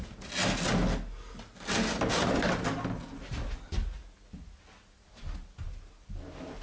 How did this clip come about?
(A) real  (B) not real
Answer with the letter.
A